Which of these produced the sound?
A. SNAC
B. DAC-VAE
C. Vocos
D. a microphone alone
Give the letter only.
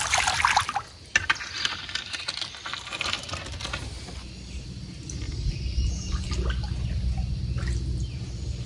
D